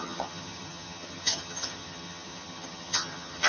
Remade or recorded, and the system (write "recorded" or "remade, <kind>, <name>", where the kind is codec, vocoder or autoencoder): remade, vocoder, HiFi-GAN